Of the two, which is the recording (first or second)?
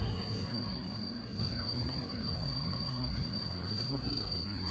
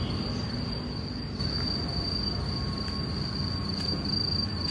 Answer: second